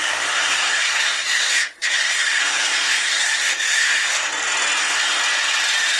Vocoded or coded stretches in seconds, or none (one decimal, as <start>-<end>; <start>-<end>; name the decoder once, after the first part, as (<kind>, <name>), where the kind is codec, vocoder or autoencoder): 0.0-4.3 (codec, SNAC); 4.8-5.2